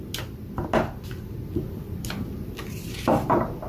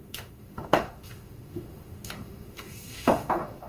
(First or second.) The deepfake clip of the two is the second